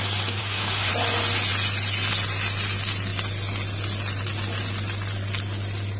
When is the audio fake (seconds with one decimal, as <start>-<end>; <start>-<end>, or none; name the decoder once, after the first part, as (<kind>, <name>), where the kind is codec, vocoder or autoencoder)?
0.4-0.9 (codec, DAC)